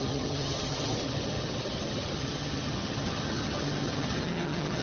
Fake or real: fake